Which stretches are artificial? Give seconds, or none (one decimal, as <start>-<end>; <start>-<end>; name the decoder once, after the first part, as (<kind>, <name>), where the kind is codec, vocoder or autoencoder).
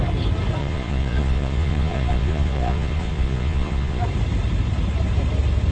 0.6-4.0 (vocoder, Vocos)